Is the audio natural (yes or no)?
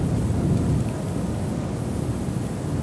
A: yes